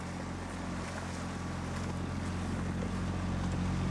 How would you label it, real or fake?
real